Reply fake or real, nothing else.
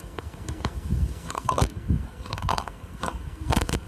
fake